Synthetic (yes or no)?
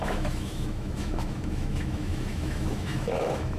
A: yes